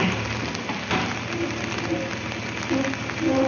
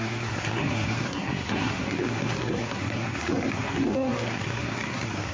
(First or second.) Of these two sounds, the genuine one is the first